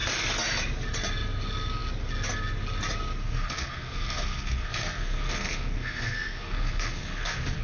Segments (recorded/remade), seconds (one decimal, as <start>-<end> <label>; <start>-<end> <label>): 0.0-3.2 recorded; 3.2-7.6 remade